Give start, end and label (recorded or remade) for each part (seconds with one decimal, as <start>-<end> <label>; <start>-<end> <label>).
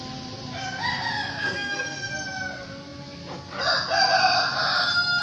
0.0-1.3 recorded; 1.3-2.1 remade; 2.1-5.2 recorded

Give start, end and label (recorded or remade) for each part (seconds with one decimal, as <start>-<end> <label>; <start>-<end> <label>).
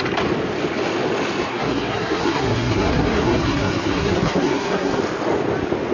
0.0-1.5 recorded; 1.5-5.0 remade; 5.0-5.9 recorded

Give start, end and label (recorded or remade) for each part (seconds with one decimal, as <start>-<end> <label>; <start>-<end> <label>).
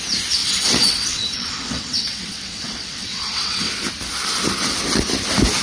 0.0-0.4 recorded; 0.4-3.7 remade; 3.7-5.6 recorded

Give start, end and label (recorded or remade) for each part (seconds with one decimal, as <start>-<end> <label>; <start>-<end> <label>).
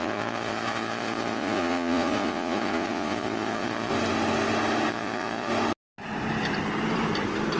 0.0-3.9 remade; 3.9-4.9 recorded; 4.9-5.5 remade; 5.5-7.6 recorded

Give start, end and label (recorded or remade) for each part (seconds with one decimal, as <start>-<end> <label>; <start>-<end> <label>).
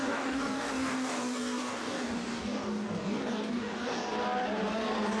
0.0-4.1 remade; 4.1-5.2 recorded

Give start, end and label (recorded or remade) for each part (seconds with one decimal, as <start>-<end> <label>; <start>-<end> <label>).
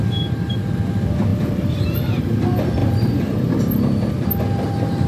0.0-1.3 recorded; 1.3-2.2 remade; 2.2-2.8 recorded; 2.8-3.6 remade; 3.6-5.1 recorded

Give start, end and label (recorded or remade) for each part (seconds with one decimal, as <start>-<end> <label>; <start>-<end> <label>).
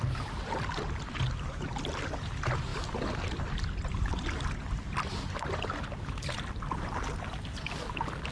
0.0-8.3 recorded